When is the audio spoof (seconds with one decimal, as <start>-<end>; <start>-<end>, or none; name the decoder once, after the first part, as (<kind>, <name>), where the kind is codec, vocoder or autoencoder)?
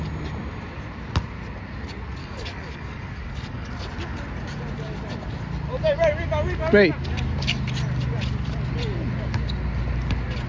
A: 2.2-3.7 (codec, DAC)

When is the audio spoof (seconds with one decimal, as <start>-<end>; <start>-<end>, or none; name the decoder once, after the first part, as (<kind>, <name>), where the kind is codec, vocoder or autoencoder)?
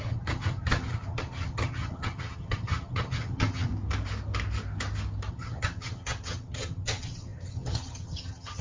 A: 0.0-3.7 (vocoder, HiFi-GAN); 5.3-8.6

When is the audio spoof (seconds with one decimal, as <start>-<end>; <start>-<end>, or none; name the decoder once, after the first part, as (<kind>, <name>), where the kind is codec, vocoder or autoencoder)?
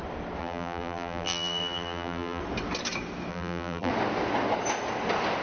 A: 0.4-2.4 (vocoder, BigVGAN v2); 3.3-3.9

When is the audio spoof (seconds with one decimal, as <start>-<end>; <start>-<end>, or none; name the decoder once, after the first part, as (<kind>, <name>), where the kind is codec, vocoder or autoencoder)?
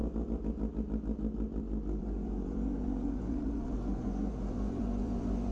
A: 2.0-5.5 (vocoder, Vocos)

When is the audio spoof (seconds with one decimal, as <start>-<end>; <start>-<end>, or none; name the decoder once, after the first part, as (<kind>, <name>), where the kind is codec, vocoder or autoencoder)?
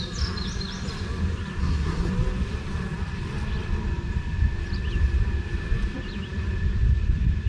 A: 1.6-2.1 (codec, SNAC)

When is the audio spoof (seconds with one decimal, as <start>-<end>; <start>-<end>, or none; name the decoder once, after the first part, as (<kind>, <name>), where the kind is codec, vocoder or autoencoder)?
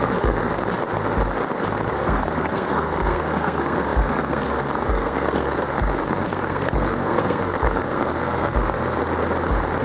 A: 0.0-0.7 (codec, SNAC); 1.9-9.0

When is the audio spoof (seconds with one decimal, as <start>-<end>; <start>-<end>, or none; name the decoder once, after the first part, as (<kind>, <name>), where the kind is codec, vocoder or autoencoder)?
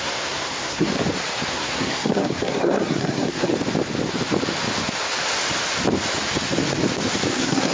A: 0.0-0.9 (codec, SNAC); 1.5-3.5; 7.3-7.7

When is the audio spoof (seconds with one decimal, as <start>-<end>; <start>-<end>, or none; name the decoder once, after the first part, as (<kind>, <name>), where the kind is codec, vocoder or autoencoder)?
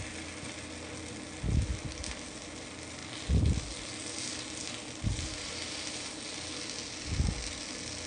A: none